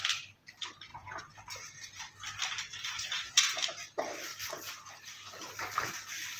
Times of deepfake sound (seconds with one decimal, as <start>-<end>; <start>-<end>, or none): 0.9-2.0; 2.7-3.6